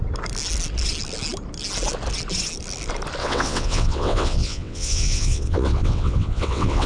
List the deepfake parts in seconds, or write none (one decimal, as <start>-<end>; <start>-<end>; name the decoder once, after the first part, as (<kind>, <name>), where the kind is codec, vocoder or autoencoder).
3.2-6.9 (vocoder, WaveNeXt)